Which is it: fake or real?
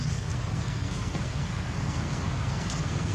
fake